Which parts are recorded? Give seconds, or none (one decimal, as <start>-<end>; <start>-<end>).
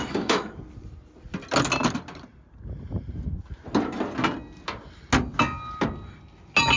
0.6-6.8